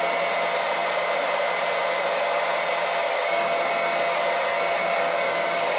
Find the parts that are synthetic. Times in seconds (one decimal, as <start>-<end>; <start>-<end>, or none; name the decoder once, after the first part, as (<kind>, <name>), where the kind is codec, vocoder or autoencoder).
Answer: 3.0-3.7 (codec, DAC); 4.8-5.8